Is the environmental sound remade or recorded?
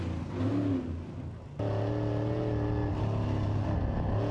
recorded